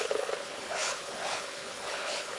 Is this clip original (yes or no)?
no